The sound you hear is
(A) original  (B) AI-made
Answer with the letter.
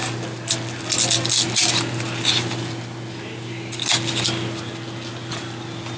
A